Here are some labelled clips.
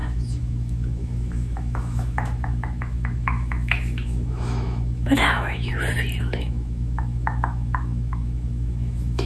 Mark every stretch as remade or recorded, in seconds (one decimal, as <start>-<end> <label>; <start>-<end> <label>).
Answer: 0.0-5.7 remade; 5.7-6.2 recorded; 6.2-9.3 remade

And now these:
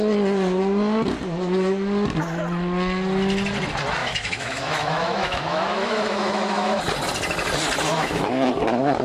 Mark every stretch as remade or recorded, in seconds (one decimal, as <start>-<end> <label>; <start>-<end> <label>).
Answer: 0.0-4.0 recorded; 4.0-6.8 remade; 6.8-7.9 recorded; 7.9-8.5 remade; 8.5-9.0 recorded

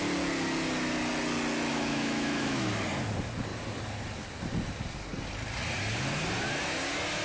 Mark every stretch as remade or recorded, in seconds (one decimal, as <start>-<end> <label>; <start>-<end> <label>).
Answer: 0.0-1.7 recorded; 1.7-2.7 remade; 2.7-7.2 recorded

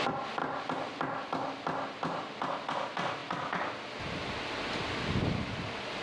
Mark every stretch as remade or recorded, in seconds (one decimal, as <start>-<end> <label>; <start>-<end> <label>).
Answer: 0.0-6.0 recorded

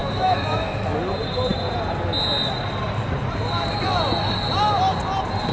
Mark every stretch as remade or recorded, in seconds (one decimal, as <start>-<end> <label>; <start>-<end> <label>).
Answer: 0.0-1.0 remade; 1.0-5.5 recorded

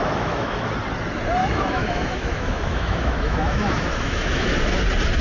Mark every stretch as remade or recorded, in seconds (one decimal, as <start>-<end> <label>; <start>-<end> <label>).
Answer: 0.0-0.7 remade; 0.7-1.4 recorded; 1.4-4.5 remade; 4.5-5.2 recorded